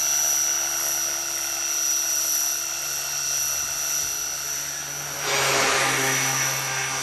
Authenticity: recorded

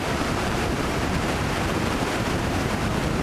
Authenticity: remade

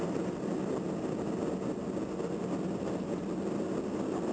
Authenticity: recorded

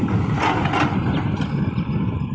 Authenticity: recorded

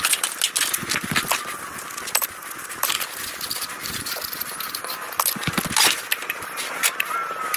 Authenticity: recorded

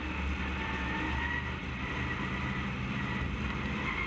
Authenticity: recorded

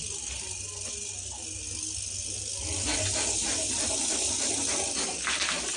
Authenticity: recorded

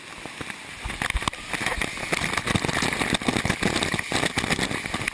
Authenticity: recorded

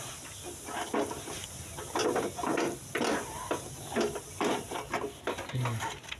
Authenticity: recorded